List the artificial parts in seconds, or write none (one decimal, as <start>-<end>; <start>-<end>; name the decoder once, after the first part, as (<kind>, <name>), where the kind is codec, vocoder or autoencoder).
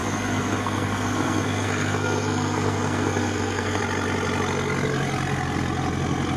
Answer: 0.0-3.8 (codec, SNAC)